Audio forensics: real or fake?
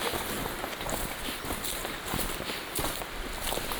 real